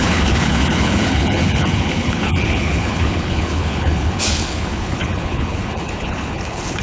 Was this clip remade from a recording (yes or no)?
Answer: yes